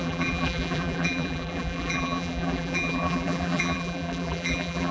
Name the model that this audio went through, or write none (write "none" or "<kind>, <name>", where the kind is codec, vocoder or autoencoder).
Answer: vocoder, BigVGAN v2